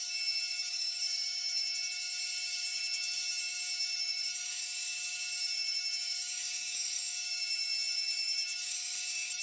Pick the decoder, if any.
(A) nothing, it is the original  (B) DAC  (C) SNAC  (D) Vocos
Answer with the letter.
B